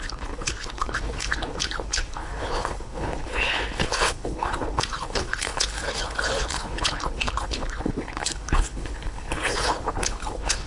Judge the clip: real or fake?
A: fake